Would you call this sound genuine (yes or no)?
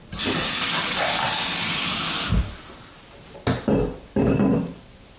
yes